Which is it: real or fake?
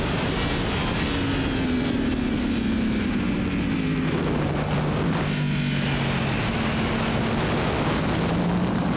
real